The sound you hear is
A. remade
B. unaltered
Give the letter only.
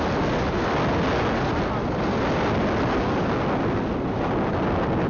B